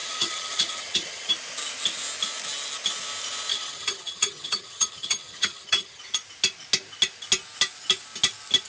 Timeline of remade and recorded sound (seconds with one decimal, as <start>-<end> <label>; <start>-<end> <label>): 0.0-1.3 remade; 1.3-3.5 recorded; 3.5-6.0 remade; 6.0-8.7 recorded